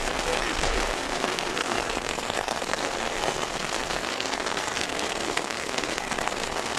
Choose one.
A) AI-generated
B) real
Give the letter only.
A